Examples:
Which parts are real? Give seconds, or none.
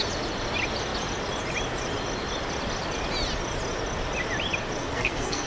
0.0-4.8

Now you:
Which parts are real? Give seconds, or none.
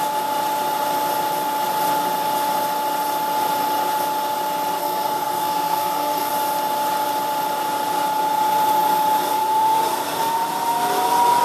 0.0-4.8; 6.3-11.4